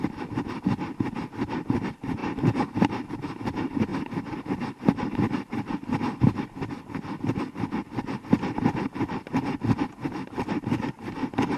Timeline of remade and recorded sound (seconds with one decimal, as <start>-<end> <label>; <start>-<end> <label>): 0.0-11.6 recorded